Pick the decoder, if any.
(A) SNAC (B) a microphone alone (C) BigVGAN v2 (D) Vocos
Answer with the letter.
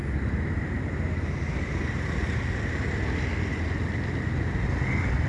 B